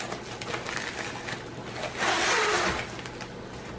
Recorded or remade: recorded